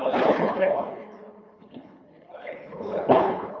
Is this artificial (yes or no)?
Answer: yes